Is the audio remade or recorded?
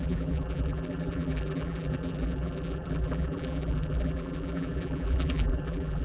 remade